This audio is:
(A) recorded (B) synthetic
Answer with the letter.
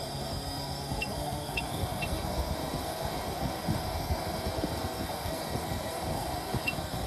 B